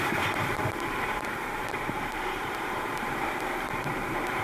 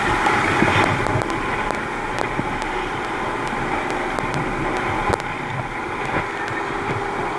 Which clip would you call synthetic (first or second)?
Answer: first